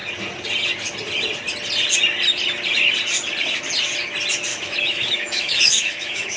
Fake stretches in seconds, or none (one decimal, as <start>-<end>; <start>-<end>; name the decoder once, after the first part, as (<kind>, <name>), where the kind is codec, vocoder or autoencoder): 4.5-6.4 (autoencoder, DAC-VAE)